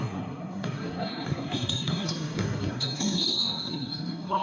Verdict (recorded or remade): remade